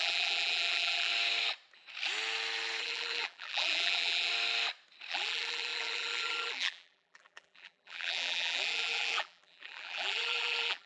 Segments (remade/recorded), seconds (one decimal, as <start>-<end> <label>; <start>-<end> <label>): 0.0-1.1 remade; 1.1-2.8 recorded; 2.8-4.3 remade; 4.3-5.1 recorded; 5.1-10.9 remade